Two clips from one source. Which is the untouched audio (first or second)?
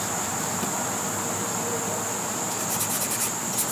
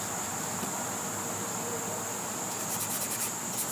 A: first